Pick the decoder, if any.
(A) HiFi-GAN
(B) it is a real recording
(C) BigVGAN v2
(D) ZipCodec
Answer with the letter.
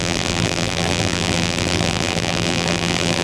C